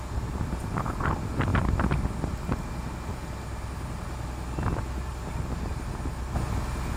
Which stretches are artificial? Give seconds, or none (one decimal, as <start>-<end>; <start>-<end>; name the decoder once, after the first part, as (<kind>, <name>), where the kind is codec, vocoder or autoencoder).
none